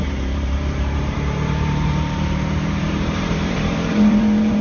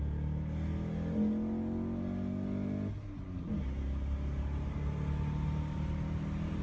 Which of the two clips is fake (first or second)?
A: first